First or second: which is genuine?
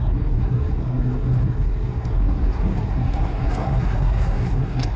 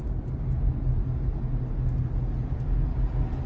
second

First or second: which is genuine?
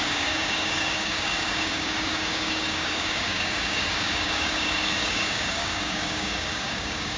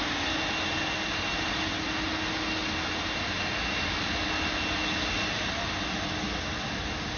second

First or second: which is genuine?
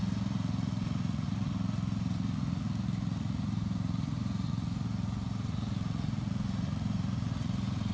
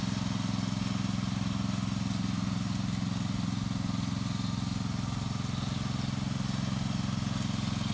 second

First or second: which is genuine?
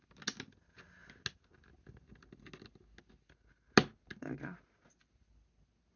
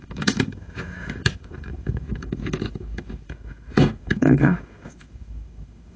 first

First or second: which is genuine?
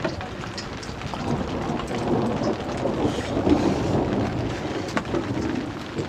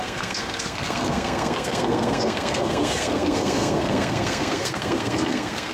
first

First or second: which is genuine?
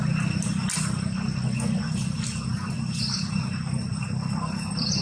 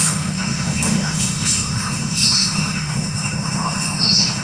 first